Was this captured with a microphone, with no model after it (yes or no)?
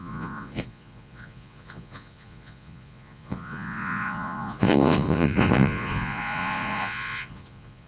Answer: no